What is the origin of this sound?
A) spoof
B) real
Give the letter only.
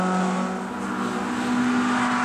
B